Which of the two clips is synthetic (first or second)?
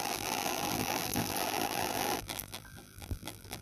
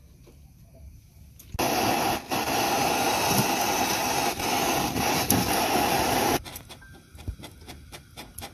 first